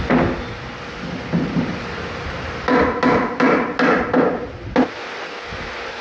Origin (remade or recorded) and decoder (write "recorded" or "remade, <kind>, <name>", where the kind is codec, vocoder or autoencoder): recorded